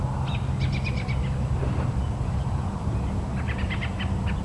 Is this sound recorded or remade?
recorded